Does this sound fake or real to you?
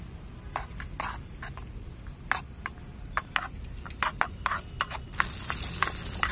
real